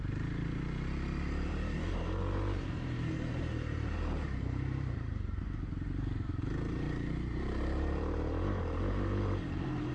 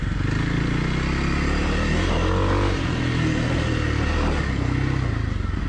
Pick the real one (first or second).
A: second